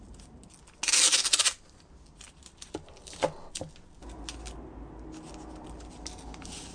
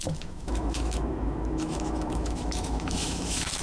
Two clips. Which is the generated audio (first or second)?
second